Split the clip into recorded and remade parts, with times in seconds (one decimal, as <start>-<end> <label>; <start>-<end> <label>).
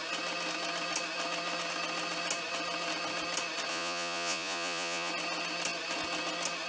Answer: 0.0-3.7 recorded; 3.7-5.1 remade; 5.1-6.7 recorded